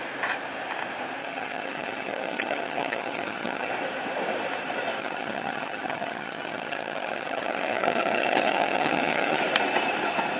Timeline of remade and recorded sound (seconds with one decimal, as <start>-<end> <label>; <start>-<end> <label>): 0.0-1.2 recorded; 1.2-3.7 remade; 3.7-5.0 recorded; 5.0-9.4 remade; 9.4-10.4 recorded